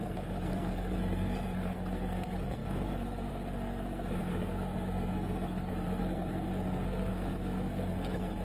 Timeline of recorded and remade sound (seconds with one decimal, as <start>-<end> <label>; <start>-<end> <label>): 0.0-8.4 remade